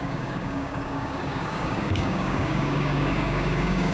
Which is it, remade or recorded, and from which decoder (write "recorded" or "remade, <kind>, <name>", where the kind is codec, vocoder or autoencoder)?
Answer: remade, codec, DAC